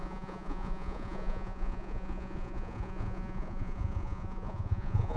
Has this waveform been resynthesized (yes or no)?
yes